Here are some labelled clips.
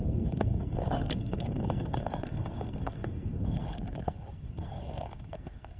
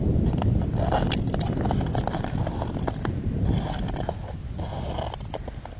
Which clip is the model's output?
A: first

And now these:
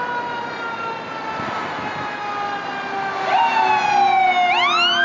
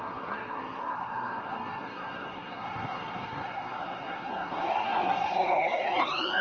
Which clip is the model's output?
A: second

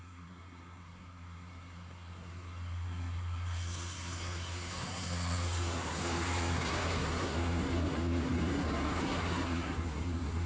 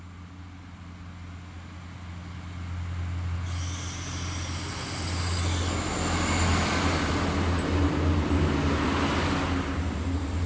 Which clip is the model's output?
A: first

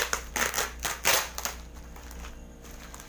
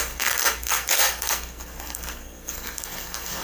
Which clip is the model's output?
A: second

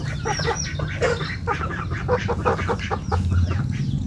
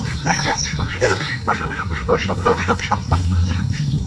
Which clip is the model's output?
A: second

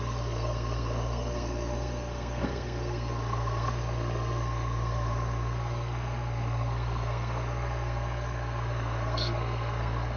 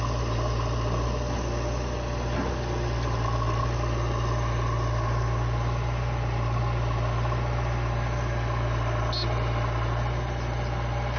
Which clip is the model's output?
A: first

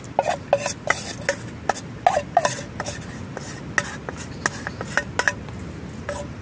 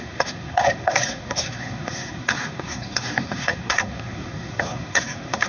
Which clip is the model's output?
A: second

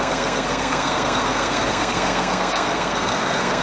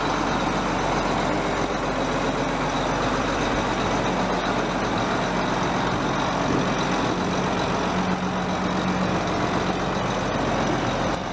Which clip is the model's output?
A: first